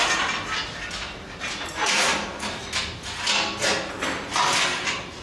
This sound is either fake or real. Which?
fake